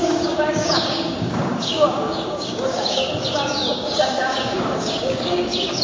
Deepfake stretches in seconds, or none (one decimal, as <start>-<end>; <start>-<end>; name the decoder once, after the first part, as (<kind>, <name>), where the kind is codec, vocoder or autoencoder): 0.0-5.8 (codec, DAC)

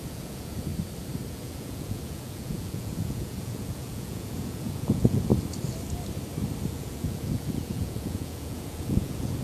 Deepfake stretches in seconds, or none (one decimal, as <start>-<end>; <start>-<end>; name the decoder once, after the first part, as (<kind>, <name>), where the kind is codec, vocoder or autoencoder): 0.0-0.7 (vocoder, Vocos); 1.3-5.3; 6.7-9.4

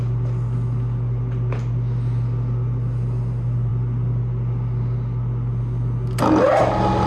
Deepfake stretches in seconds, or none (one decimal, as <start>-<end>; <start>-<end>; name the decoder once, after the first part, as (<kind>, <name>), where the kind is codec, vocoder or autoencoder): none